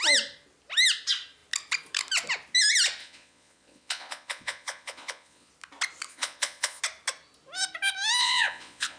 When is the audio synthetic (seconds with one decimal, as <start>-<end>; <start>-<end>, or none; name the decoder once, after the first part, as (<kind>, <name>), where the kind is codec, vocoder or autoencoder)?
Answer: 3.0-5.5 (vocoder, Vocos); 6.1-6.8; 8.2-9.0